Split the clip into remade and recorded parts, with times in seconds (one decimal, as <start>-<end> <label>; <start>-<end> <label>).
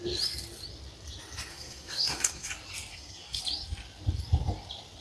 0.0-1.5 recorded; 1.5-2.5 remade; 2.5-2.9 recorded; 2.9-3.4 remade; 3.4-5.0 recorded